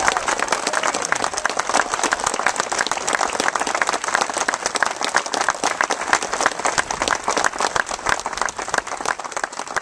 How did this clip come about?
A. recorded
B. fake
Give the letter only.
A